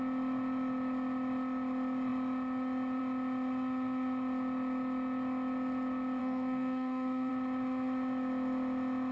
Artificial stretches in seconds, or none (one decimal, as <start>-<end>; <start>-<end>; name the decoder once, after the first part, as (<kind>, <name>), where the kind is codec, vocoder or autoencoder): 6.2-7.3 (codec, SNAC)